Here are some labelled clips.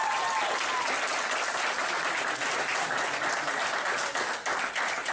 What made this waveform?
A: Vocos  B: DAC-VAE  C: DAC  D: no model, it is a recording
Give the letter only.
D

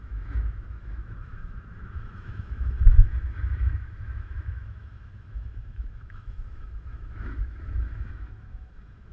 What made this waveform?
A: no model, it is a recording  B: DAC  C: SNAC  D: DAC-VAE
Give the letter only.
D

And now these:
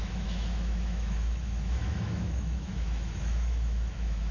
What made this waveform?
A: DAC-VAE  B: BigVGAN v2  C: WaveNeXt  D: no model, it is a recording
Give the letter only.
A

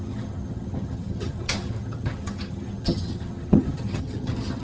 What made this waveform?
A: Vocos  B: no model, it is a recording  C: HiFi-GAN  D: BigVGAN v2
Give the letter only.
C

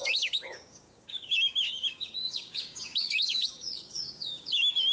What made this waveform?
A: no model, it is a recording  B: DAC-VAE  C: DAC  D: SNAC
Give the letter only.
C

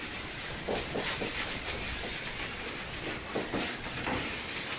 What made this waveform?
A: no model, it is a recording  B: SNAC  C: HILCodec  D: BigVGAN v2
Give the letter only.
A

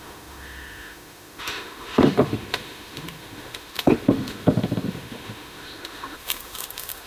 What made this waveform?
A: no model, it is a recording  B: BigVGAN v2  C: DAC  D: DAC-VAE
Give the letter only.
D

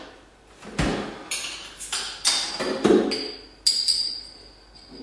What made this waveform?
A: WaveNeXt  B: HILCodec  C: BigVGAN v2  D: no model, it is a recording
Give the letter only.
D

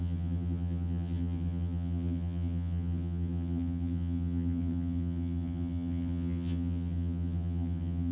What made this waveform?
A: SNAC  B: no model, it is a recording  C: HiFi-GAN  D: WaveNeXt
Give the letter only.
C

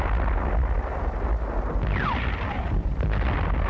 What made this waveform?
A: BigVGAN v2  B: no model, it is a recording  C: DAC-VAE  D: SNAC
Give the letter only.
B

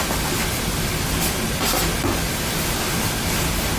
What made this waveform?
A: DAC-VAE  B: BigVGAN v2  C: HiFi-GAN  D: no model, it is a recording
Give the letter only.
D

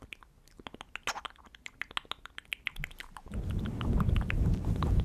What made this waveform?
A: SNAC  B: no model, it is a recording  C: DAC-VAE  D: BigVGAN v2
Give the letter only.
B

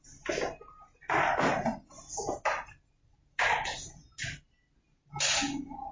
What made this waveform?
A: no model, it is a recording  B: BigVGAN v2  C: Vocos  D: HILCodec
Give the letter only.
A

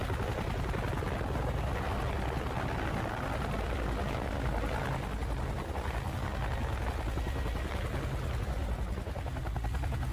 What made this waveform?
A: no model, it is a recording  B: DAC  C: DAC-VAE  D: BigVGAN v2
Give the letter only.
A